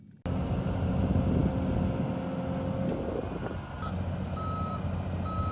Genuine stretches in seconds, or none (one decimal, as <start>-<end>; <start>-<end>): 0.0-5.5